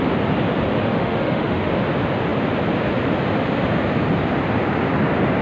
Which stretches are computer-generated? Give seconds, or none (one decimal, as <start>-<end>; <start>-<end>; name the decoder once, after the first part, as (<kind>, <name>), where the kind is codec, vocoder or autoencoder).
0.8-1.7 (autoencoder, DAC-VAE)